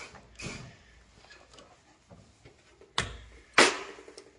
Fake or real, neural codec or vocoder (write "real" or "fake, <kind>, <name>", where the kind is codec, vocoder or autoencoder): real